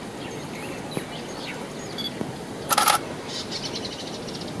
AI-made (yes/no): no